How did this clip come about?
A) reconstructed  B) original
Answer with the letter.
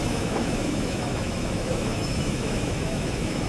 A